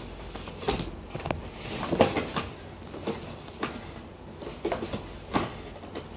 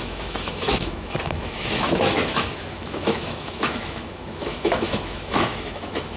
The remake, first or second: second